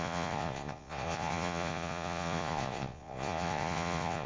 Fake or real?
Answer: fake